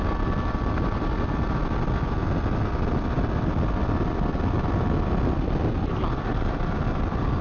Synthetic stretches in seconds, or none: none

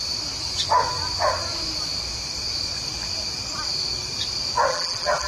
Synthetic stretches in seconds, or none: 4.7-5.3 (vocoder, BigVGAN v2)

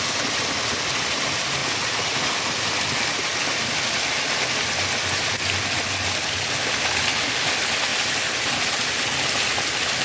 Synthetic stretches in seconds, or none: none

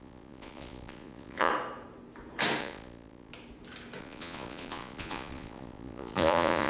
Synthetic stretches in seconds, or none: 0.0-1.5 (vocoder, Vocos); 2.6-3.3; 4.0-6.7

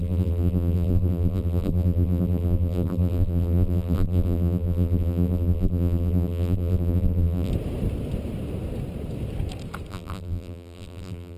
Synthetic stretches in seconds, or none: 0.0-7.5 (vocoder, BigVGAN v2); 9.9-11.4